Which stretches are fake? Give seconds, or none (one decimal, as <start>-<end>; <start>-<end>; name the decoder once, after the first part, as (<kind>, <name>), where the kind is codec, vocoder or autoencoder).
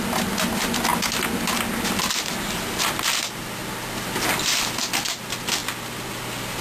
none